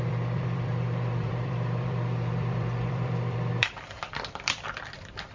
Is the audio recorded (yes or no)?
no